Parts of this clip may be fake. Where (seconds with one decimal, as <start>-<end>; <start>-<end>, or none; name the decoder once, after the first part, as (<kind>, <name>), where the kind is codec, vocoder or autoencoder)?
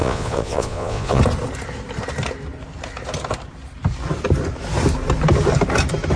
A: 0.0-1.2 (vocoder, Vocos)